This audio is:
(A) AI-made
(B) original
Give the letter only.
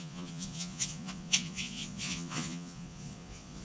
A